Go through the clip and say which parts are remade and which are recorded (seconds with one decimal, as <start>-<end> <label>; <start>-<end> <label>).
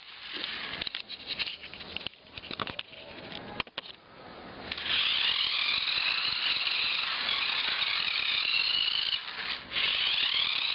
0.0-1.1 remade; 1.1-6.1 recorded; 6.1-7.9 remade; 7.9-8.7 recorded; 8.7-9.2 remade; 9.2-10.7 recorded